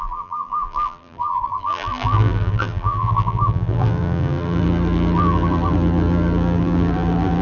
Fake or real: fake